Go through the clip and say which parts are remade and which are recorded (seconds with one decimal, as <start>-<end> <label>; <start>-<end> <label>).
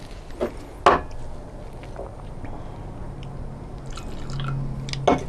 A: 0.0-5.3 recorded